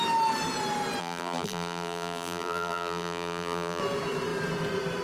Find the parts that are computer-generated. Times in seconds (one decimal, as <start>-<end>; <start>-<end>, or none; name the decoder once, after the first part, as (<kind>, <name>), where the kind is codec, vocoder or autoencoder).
1.0-3.8 (vocoder, BigVGAN v2)